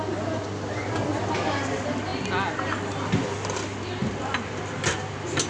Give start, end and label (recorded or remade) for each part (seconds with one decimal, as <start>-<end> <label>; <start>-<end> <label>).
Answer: 0.0-5.5 recorded